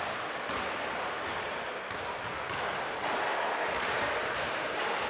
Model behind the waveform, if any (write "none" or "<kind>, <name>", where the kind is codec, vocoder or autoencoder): none